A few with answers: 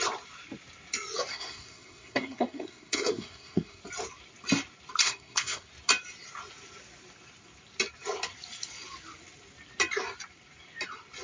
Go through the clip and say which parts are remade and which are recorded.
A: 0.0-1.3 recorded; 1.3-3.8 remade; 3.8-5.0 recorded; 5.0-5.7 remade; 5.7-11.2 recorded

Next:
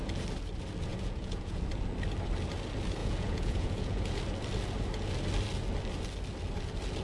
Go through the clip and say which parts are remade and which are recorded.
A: 0.0-0.9 recorded; 0.9-1.6 remade; 1.6-3.0 recorded; 3.0-4.2 remade; 4.2-7.0 recorded

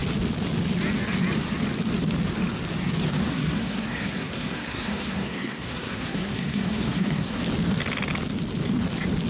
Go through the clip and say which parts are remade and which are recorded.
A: 0.0-3.3 recorded; 3.3-7.4 remade; 7.4-9.3 recorded

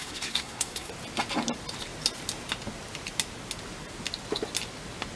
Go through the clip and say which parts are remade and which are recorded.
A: 0.0-0.9 remade; 0.9-5.2 recorded

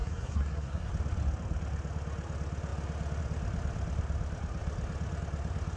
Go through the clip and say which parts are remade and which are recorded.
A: 0.0-0.9 remade; 0.9-5.8 recorded